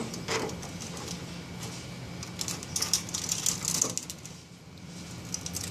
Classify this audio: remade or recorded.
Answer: recorded